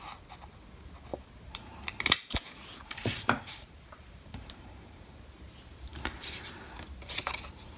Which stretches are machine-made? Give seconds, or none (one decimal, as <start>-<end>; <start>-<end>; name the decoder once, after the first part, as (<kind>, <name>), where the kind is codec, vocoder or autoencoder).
1.1-5.0 (vocoder, BigVGAN v2)